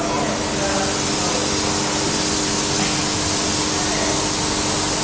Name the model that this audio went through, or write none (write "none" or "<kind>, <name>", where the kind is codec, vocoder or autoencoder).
none